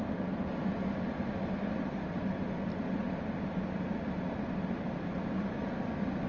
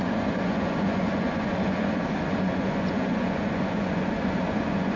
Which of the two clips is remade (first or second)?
second